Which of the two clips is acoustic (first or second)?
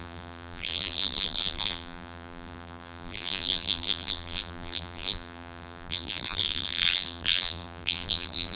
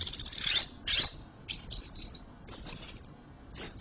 second